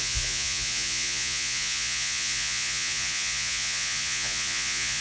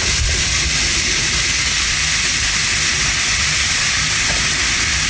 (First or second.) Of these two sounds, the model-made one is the first